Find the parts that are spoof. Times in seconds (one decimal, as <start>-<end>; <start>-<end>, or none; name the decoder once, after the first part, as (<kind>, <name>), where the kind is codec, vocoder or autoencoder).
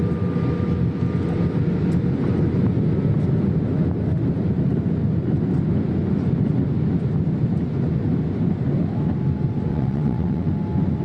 9.7-10.5 (vocoder, WaveNeXt)